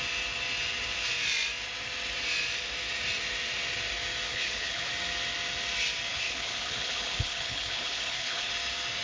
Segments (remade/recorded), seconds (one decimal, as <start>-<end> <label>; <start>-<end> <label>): 0.0-4.3 recorded; 4.3-4.9 remade; 4.9-6.1 recorded; 6.1-8.5 remade; 8.5-9.0 recorded